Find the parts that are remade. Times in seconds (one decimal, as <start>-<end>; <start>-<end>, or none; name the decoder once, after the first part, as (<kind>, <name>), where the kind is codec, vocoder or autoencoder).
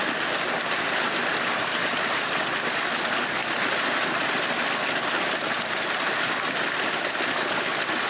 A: none